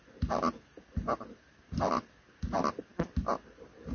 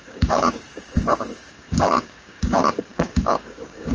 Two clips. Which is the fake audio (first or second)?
second